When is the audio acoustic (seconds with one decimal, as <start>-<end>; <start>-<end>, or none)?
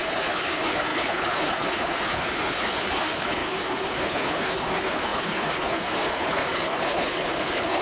none